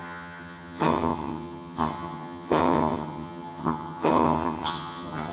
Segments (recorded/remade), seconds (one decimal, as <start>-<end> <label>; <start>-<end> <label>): 0.0-5.3 remade